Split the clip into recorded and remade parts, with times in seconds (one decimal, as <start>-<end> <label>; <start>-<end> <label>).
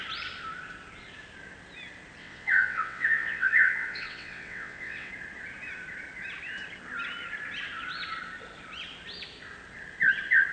0.0-2.2 recorded; 2.2-5.1 remade; 5.1-10.5 recorded